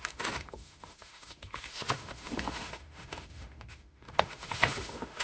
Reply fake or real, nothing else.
fake